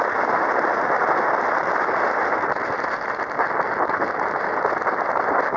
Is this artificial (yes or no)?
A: no